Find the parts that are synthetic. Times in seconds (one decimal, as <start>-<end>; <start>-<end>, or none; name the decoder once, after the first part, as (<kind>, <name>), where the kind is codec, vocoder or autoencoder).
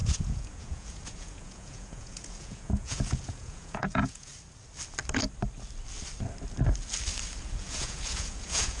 0.0-4.3 (vocoder, Vocos); 7.4-8.8